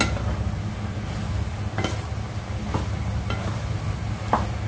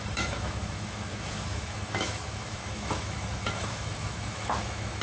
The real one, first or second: first